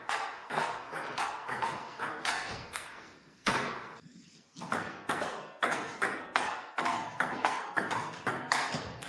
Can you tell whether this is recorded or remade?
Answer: remade